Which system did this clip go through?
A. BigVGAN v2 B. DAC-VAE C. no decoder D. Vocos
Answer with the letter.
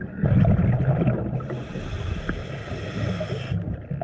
C